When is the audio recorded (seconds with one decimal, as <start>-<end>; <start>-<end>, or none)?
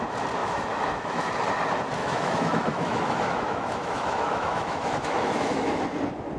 0.0-0.4; 1.3-2.0; 5.8-6.4